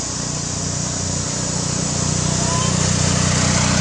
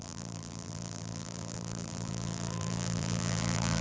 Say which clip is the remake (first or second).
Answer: second